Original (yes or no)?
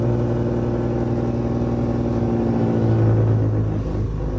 yes